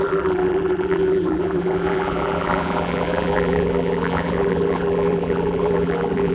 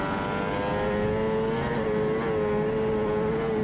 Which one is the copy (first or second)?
first